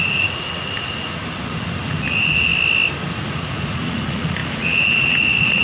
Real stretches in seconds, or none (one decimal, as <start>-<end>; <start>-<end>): 1.2-1.8; 2.5-3.1